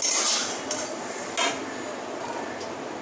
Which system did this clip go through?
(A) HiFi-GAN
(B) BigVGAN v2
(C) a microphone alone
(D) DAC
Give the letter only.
C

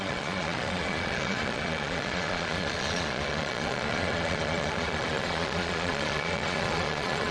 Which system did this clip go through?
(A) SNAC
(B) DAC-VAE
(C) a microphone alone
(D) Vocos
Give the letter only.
D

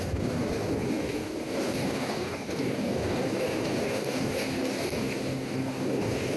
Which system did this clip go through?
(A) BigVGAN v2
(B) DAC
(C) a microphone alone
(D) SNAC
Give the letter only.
B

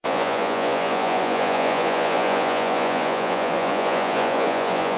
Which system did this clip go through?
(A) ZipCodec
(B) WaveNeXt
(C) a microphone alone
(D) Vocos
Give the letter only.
D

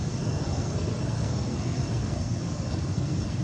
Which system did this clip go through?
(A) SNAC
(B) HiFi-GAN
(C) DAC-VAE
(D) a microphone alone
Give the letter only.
A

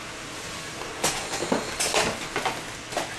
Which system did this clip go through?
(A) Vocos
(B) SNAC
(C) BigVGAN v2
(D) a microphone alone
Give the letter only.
D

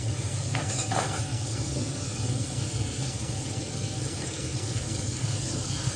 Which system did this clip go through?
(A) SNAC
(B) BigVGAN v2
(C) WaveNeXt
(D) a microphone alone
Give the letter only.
A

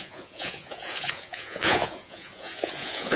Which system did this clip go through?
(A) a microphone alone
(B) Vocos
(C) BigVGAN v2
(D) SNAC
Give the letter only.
B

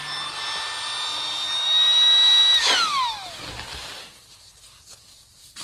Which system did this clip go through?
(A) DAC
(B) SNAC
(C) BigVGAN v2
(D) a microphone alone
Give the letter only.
D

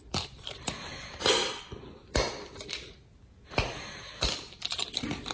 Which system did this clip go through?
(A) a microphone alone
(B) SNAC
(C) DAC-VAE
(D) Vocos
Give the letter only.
A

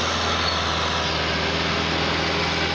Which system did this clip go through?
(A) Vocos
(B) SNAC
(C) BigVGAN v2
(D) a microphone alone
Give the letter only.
D